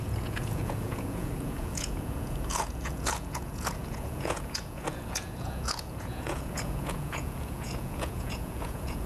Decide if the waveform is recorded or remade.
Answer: remade